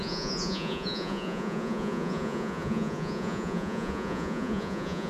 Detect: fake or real fake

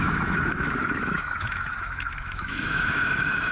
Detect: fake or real fake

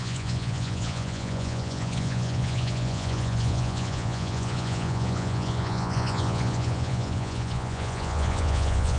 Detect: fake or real fake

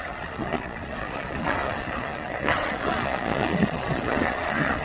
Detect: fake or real fake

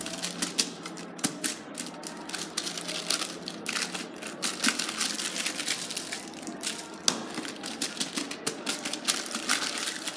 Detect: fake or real real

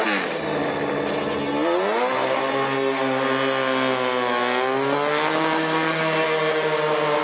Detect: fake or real real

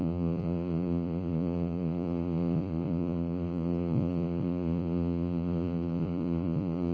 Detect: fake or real fake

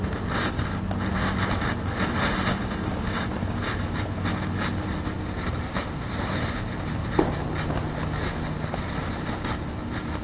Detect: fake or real real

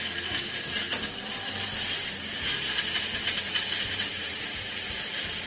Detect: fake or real real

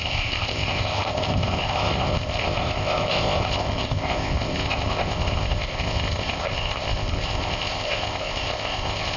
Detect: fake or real fake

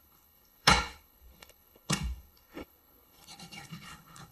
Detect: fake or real fake